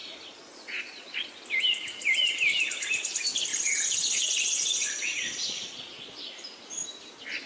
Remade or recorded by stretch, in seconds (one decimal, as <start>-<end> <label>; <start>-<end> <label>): 0.0-1.3 remade; 1.3-3.5 recorded; 3.5-6.3 remade; 6.3-7.5 recorded

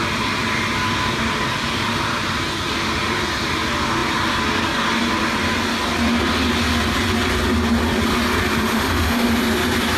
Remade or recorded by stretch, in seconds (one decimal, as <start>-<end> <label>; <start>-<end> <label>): 0.0-8.7 recorded; 8.7-9.3 remade; 9.3-10.0 recorded

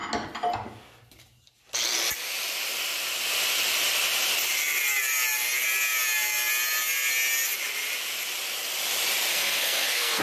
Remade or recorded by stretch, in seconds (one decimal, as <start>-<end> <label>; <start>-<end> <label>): 0.0-9.3 recorded; 9.3-10.2 remade

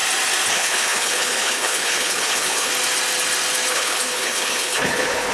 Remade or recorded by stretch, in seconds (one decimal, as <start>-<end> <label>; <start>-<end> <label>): 0.0-0.5 recorded; 0.5-2.7 remade; 2.7-3.7 recorded; 3.7-5.3 remade

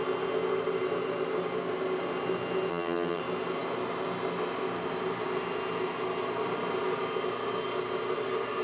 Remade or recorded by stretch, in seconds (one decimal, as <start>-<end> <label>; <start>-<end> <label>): 0.0-2.7 recorded; 2.7-3.2 remade; 3.2-8.6 recorded